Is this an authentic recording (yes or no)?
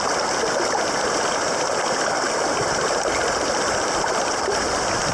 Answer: yes